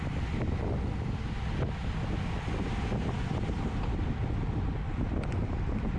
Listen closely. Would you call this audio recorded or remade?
recorded